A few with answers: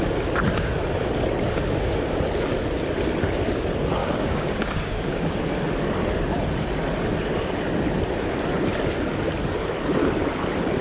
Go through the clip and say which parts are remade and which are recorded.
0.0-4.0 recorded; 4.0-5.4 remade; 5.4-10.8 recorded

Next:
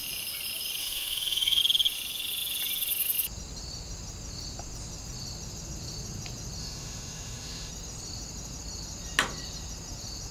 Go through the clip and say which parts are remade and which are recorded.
0.0-0.8 recorded; 0.8-1.6 remade; 1.6-6.6 recorded; 6.6-7.7 remade; 7.7-10.3 recorded

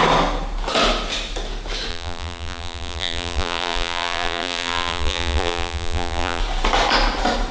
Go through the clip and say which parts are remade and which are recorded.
0.0-1.9 recorded; 1.9-6.4 remade; 6.4-7.5 recorded

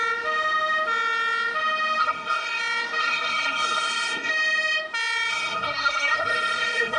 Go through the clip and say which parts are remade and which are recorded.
0.0-2.0 recorded; 2.0-2.6 remade; 2.6-3.0 recorded; 3.0-4.3 remade; 4.3-5.3 recorded; 5.3-7.0 remade

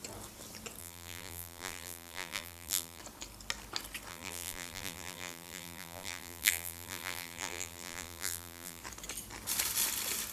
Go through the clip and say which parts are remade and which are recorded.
0.0-0.8 recorded; 0.8-3.0 remade; 3.0-4.1 recorded; 4.1-8.8 remade; 8.8-10.3 recorded